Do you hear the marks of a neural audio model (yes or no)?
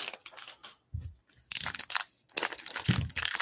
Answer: no